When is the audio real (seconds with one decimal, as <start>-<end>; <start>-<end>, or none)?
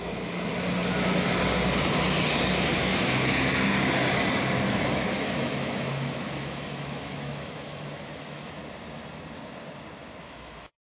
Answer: 0.5-2.8; 3.5-4.7; 8.6-10.2